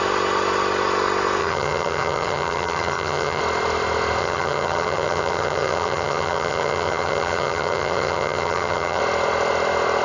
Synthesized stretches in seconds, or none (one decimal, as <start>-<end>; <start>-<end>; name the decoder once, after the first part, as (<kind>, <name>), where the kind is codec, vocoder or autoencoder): 1.4-3.4 (vocoder, HiFi-GAN); 4.2-9.0